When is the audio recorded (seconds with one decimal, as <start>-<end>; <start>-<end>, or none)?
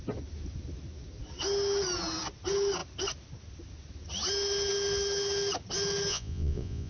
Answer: 0.0-6.1